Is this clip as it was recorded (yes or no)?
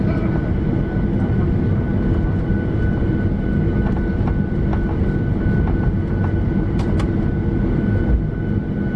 yes